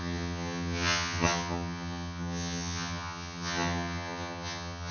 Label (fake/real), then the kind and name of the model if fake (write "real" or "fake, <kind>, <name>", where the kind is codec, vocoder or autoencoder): fake, vocoder, HiFi-GAN